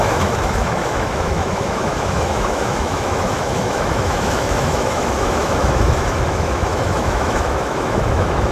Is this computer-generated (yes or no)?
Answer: yes